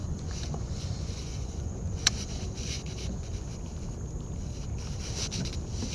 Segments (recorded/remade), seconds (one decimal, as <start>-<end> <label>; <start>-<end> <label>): 0.0-3.5 remade; 3.5-5.9 recorded